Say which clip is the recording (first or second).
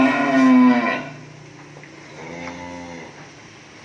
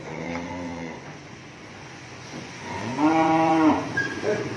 first